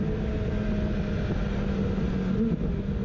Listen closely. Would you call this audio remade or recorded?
recorded